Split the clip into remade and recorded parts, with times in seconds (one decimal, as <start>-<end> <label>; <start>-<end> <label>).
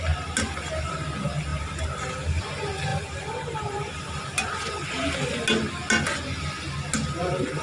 0.0-1.5 recorded; 1.5-2.4 remade; 2.4-2.9 recorded; 2.9-4.2 remade; 4.2-7.6 recorded